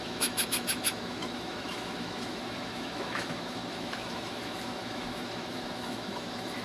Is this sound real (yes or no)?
no